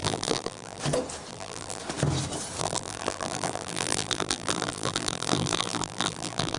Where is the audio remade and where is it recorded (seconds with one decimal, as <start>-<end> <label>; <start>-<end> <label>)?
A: 0.0-0.8 remade; 0.8-1.3 recorded; 1.3-1.8 remade; 1.8-2.6 recorded; 2.6-6.6 remade